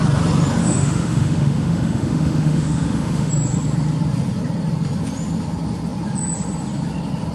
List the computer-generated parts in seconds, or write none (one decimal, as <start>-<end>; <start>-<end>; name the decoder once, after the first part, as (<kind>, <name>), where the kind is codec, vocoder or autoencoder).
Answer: 0.6-3.3 (autoencoder, DAC-VAE)